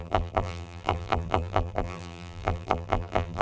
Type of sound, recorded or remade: remade